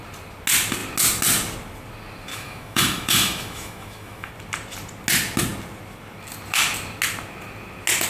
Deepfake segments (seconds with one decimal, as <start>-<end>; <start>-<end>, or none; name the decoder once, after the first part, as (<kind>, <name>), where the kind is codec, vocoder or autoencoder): 2.3-4.3 (autoencoder, DAC-VAE)